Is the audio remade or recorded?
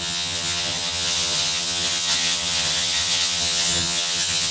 remade